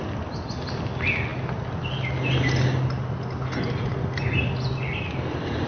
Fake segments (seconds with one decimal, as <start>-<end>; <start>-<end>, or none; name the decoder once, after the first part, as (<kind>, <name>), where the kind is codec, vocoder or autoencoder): none